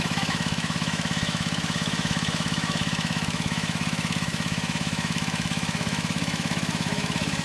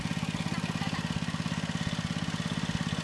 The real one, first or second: second